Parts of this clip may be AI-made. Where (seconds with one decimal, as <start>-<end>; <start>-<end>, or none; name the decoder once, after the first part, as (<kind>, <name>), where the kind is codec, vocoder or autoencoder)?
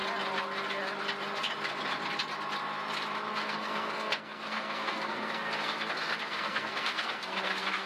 3.3-7.9 (codec, SNAC)